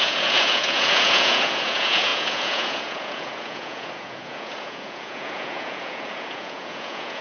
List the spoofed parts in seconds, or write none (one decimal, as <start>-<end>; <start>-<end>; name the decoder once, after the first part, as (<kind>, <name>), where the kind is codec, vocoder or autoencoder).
0.0-7.2 (vocoder, Vocos)